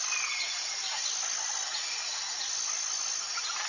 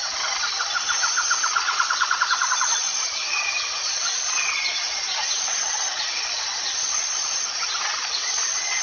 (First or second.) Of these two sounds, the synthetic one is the second